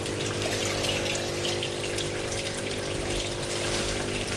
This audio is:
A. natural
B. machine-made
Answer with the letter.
A